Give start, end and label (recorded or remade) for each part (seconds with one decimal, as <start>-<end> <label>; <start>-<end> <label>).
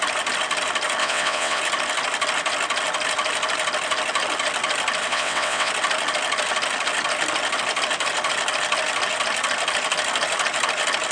0.0-1.0 recorded; 1.0-1.6 remade; 1.6-5.1 recorded; 5.1-5.7 remade; 5.7-11.1 recorded